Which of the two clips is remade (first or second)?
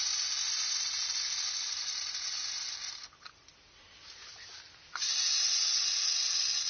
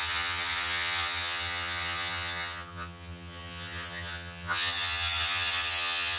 second